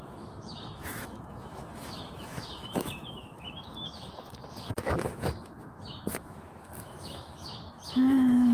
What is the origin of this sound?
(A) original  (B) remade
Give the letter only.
B